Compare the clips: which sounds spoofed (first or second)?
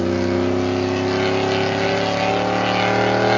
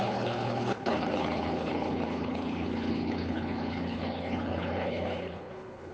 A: second